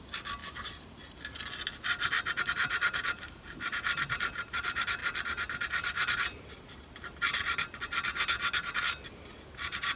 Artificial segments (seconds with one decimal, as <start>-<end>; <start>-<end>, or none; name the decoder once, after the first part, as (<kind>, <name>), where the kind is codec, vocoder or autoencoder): 0.4-1.0 (vocoder, BigVGAN v2); 2.6-4.6